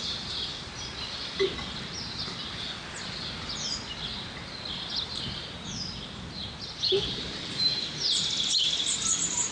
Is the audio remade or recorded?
recorded